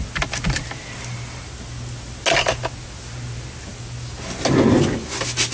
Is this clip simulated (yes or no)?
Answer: no